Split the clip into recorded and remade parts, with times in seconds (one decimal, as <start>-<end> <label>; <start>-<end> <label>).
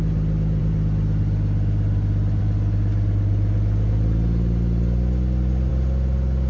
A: 0.0-6.5 recorded